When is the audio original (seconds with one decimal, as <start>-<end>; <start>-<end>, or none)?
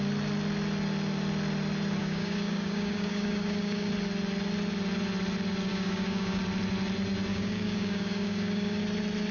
0.0-2.0; 3.9-5.7; 6.4-7.3; 8.8-9.3